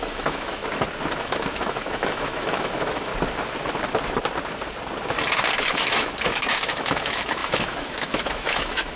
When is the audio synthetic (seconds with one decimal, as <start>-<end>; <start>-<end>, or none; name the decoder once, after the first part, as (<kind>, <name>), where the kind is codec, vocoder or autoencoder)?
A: 0.0-0.6 (autoencoder, DAC-VAE); 1.2-3.1; 5.6-9.0